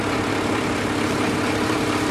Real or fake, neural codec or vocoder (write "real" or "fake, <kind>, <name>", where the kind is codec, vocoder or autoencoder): fake, vocoder, BigVGAN v2